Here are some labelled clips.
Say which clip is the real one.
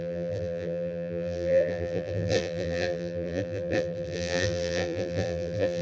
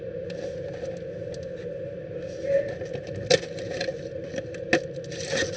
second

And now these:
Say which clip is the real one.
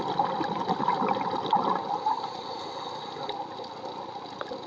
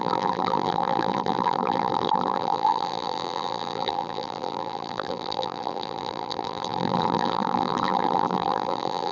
first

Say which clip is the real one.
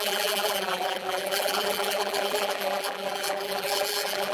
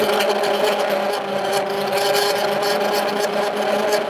second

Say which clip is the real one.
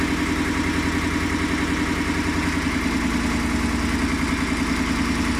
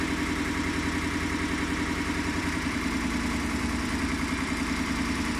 first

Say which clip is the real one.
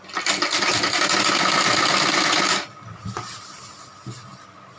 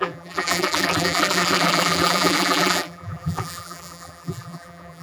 first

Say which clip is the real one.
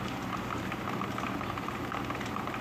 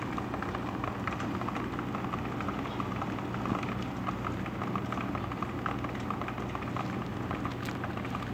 second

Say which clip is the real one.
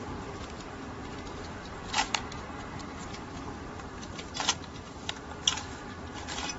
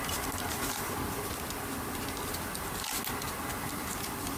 second